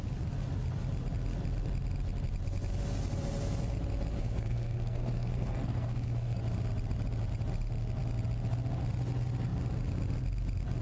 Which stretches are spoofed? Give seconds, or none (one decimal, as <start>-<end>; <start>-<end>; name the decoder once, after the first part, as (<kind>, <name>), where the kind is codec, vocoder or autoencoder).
4.2-6.4 (codec, SNAC)